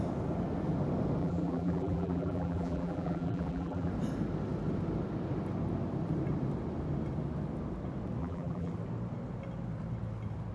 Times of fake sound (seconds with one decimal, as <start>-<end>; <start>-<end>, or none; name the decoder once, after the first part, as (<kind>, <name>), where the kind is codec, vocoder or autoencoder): 1.2-3.9 (vocoder, BigVGAN v2); 8.2-8.7